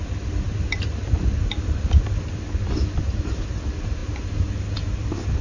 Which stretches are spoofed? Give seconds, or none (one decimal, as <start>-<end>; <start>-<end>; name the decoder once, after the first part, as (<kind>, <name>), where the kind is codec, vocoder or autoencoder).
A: 3.0-3.5 (vocoder, BigVGAN v2)